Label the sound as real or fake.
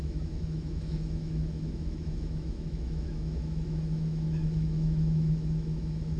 fake